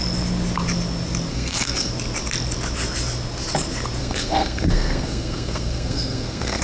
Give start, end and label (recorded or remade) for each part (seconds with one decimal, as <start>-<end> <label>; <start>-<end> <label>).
0.0-1.3 recorded; 1.3-1.9 remade; 1.9-4.0 recorded; 4.0-6.6 remade